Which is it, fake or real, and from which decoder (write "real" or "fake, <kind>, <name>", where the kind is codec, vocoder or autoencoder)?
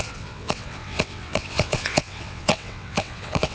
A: fake, vocoder, WaveNeXt